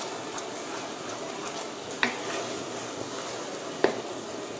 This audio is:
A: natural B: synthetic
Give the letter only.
A